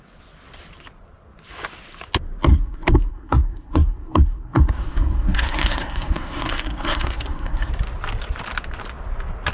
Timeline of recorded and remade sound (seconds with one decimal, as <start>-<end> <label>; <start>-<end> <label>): 0.0-2.5 recorded; 2.5-7.7 remade; 7.7-9.5 recorded